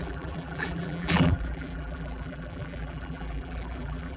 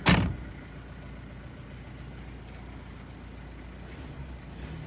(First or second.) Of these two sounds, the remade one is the first